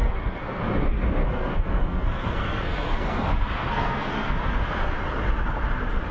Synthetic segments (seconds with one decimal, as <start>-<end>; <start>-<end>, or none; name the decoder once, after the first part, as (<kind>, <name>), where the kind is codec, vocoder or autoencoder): 0.0-0.6 (codec, SNAC); 1.2-4.9